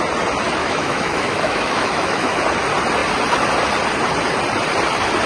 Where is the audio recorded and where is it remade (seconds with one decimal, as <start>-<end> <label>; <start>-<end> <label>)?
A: 0.0-0.6 recorded; 0.6-2.4 remade; 2.4-5.3 recorded